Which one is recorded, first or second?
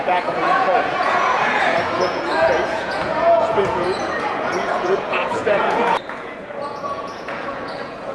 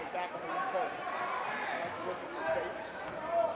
second